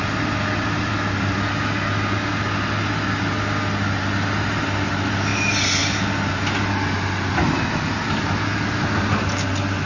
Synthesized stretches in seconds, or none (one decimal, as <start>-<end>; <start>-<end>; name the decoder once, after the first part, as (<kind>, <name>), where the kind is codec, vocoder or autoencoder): none